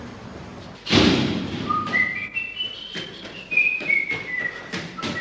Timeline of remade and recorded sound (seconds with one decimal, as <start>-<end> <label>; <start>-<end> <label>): 0.0-0.5 remade; 0.5-3.6 recorded; 3.6-5.2 remade